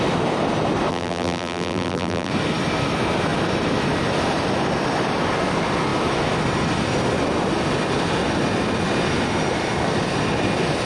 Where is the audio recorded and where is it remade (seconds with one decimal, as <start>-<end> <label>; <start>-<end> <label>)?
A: 0.0-0.9 recorded; 0.9-2.3 remade; 2.3-10.9 recorded